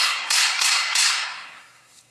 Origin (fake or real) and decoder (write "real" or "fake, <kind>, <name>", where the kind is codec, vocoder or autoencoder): fake, codec, SNAC